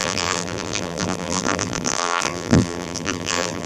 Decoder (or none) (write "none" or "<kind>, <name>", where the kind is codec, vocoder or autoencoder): vocoder, BigVGAN v2